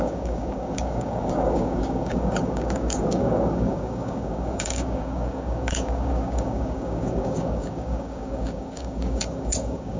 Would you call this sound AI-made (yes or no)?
yes